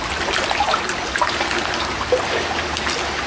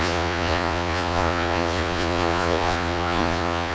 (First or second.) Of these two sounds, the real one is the first